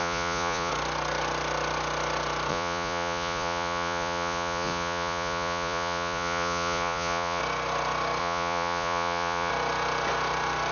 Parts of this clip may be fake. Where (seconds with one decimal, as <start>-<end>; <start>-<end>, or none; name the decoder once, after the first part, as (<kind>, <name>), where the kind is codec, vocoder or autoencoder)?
0.0-0.7 (vocoder, Vocos); 2.5-7.4; 8.2-9.5